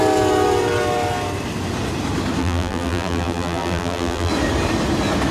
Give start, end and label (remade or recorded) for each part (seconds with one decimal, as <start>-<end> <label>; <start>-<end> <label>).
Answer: 0.0-2.4 recorded; 2.4-4.3 remade; 4.3-5.3 recorded